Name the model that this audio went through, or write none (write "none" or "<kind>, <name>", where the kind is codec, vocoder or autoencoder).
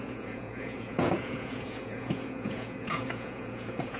vocoder, Vocos